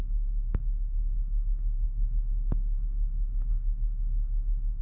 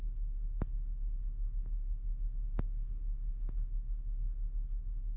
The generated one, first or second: first